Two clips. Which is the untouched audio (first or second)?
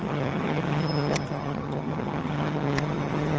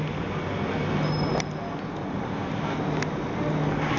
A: second